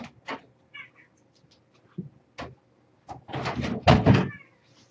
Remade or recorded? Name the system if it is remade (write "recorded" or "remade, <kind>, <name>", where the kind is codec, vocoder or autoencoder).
recorded